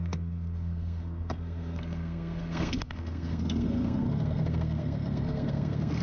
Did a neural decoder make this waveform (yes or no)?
yes